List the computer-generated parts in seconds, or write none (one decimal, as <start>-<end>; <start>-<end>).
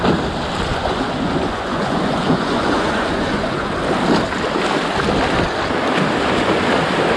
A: 0.7-3.7